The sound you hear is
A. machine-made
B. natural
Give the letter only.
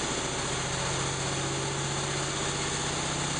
B